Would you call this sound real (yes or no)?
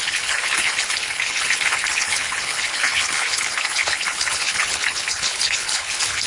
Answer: no